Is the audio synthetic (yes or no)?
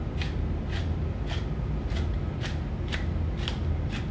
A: no